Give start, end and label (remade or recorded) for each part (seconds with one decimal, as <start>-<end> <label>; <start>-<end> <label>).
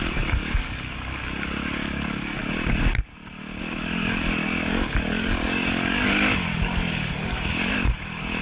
0.0-2.4 remade; 2.4-3.6 recorded; 3.6-8.4 remade